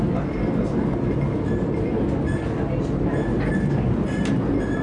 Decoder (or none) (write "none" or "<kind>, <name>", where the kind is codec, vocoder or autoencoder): none